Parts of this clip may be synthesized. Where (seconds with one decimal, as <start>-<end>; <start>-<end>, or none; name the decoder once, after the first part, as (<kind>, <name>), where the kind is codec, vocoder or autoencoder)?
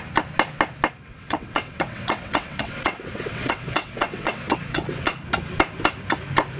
1.1-5.1 (vocoder, WaveNeXt)